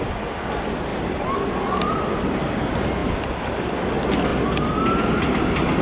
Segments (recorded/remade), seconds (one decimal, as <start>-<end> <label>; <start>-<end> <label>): 0.0-5.8 recorded